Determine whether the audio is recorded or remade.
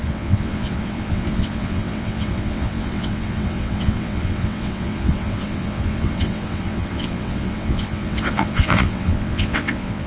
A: remade